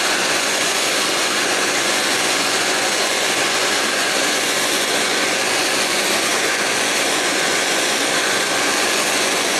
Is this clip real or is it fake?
fake